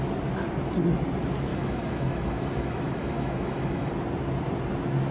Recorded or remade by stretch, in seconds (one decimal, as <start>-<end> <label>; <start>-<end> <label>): 0.0-1.5 recorded; 1.5-3.9 remade; 3.9-5.1 recorded